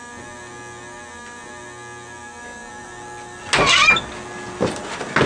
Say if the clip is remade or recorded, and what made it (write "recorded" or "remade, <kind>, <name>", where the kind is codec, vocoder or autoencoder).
recorded